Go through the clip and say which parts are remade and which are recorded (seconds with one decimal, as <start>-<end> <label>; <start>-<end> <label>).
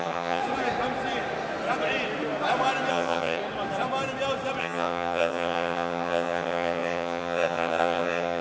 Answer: 0.0-0.4 remade; 0.4-2.9 recorded; 2.9-3.4 remade; 3.4-4.6 recorded; 4.6-8.4 remade